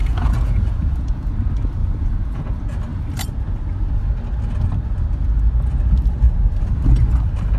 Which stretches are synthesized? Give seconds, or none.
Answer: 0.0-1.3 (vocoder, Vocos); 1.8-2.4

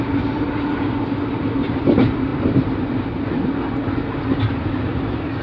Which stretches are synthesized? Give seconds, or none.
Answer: none

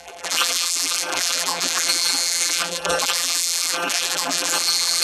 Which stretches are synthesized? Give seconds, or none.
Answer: 0.0-5.0 (vocoder, BigVGAN v2)